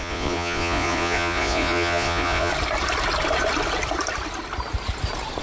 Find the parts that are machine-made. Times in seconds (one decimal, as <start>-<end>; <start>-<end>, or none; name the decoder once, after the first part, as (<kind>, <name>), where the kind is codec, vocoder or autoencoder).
0.0-2.5 (vocoder, Vocos)